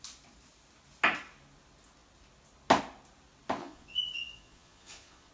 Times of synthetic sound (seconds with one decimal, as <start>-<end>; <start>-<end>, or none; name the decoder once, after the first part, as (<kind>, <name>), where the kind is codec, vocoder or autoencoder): 3.6-5.3 (vocoder, Vocos)